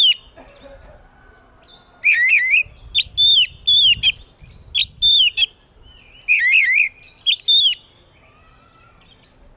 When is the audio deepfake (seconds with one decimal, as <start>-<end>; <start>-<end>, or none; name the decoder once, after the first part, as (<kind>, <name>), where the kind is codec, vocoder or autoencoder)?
none